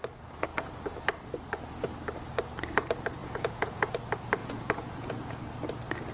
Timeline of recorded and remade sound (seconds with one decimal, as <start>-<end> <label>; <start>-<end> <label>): 0.0-3.2 recorded; 3.2-3.9 remade; 3.9-4.4 recorded; 4.4-5.4 remade; 5.4-6.1 recorded